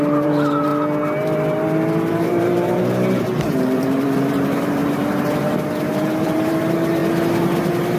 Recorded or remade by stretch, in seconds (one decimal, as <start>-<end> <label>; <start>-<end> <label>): 0.0-0.7 remade; 0.7-2.1 recorded; 2.1-4.8 remade; 4.8-5.4 recorded; 5.4-7.0 remade; 7.0-7.6 recorded; 7.6-8.0 remade